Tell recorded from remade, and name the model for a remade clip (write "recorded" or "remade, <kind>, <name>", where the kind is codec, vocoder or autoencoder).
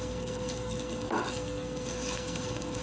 remade, codec, SNAC